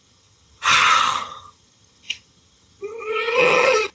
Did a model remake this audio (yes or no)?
yes